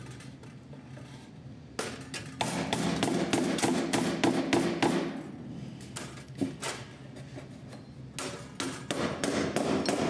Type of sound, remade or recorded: recorded